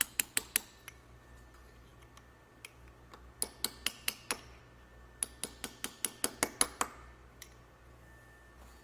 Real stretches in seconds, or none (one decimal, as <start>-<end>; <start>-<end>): 0.0-8.8